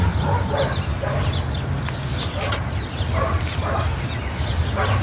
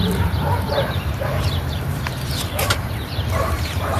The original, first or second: first